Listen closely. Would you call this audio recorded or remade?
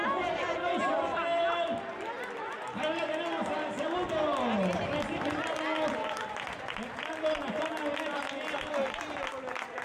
recorded